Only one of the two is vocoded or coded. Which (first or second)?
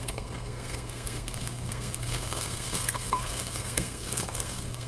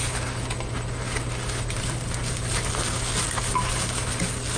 first